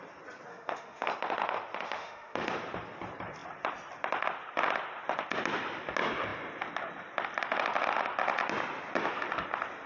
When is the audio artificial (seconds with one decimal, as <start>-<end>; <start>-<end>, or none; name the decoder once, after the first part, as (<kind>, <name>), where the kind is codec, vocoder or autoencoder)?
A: 0.5-1.1 (autoencoder, DAC-VAE); 2.0-2.5